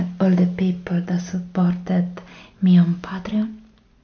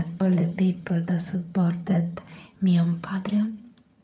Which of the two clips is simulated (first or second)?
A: second